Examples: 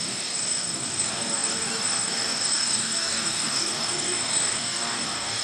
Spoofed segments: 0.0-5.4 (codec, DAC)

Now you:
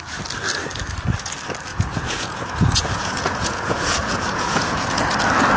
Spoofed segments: 1.7-5.1 (vocoder, Vocos)

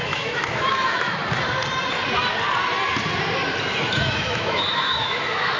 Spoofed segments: 0.0-1.1 (autoencoder, DAC-VAE); 3.9-5.6

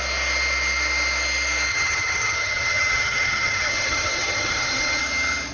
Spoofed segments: 1.7-5.0 (vocoder, HiFi-GAN)

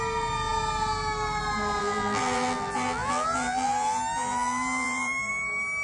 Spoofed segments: 1.8-5.3 (vocoder, BigVGAN v2)

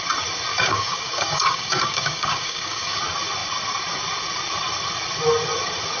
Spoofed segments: 0.5-3.0 (codec, DAC)